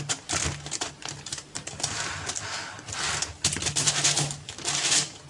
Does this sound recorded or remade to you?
recorded